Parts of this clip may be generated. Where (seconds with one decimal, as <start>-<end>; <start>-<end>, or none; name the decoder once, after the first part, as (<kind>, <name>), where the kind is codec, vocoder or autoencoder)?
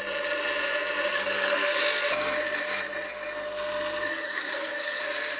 1.1-1.8 (codec, SNAC); 4.1-5.0